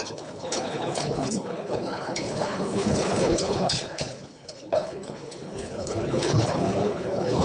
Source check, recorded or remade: remade